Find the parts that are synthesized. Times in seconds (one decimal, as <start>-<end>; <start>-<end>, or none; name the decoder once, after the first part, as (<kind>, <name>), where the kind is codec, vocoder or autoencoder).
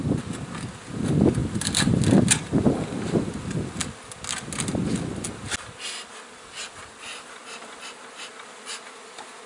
1.4-2.0 (vocoder, BigVGAN v2)